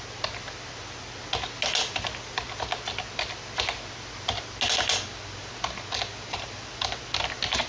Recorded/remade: recorded